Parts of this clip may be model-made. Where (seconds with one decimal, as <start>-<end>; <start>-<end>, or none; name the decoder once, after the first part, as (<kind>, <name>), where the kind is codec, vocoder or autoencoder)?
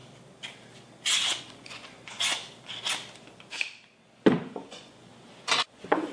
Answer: 1.4-2.4 (vocoder, Vocos); 4.4-5.1; 5.6-6.1